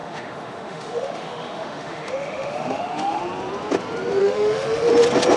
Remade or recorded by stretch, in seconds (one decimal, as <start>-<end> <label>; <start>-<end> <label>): 0.0-3.2 remade; 3.2-4.2 recorded; 4.2-4.9 remade; 4.9-5.4 recorded